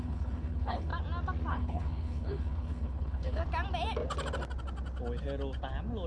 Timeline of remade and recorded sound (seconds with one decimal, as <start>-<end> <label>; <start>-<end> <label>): 0.0-0.9 remade; 0.9-1.5 recorded; 1.5-3.4 remade; 3.4-6.1 recorded